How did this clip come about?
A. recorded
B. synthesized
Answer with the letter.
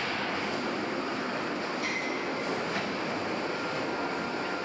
A